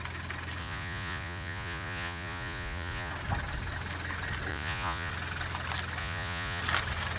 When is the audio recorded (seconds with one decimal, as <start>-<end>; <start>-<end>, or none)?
0.0-0.6; 3.1-4.5; 5.1-6.0; 6.6-7.2

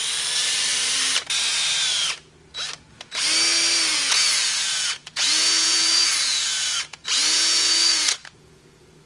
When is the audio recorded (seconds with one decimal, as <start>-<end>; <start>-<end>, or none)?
0.0-3.9

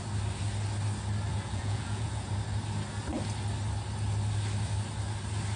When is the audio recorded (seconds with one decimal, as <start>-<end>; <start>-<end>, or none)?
0.0-1.3; 2.3-5.6

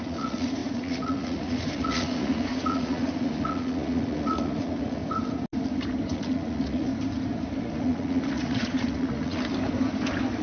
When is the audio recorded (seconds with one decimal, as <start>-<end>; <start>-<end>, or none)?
5.0-6.1; 6.9-7.6; 9.5-10.4